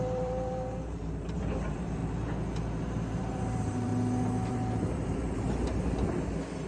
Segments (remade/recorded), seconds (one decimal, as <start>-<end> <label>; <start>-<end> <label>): 0.0-2.0 remade; 2.0-2.8 recorded; 2.8-3.9 remade; 3.9-4.5 recorded; 4.5-5.2 remade; 5.2-6.7 recorded